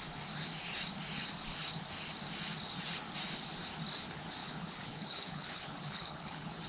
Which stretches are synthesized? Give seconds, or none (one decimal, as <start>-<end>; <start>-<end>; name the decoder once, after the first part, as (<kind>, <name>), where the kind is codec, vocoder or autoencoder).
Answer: 4.4-6.7 (codec, HILCodec)